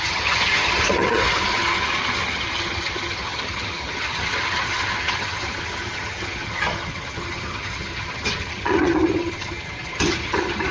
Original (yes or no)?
no